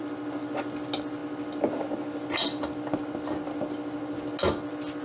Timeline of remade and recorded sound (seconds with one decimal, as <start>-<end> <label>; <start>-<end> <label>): 0.0-5.0 recorded